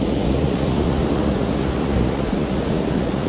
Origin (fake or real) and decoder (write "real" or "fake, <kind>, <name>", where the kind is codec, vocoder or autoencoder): fake, vocoder, Vocos